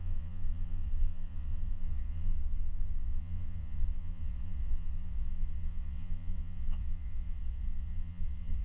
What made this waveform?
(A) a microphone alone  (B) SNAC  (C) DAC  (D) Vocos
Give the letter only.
D